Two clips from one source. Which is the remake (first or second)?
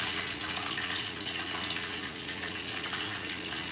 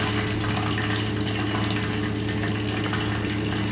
first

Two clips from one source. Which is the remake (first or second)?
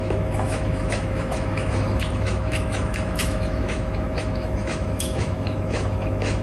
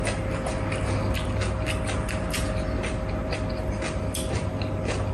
first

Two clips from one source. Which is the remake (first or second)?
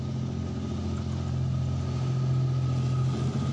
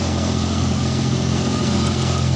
second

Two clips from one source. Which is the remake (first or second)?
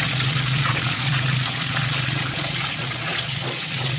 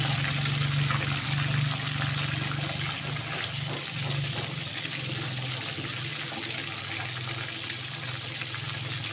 first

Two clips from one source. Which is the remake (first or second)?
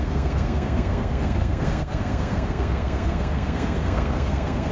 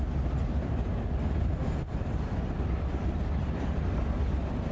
first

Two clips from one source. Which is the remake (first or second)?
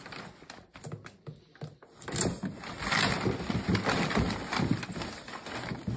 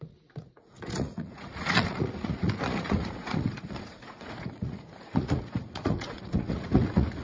second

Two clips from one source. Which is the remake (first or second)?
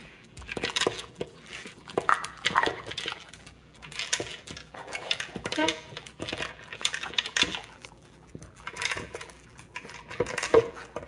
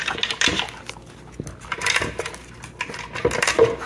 first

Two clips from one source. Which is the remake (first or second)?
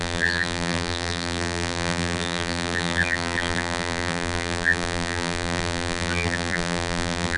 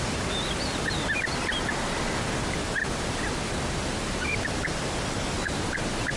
first